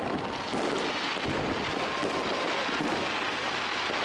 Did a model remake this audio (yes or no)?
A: no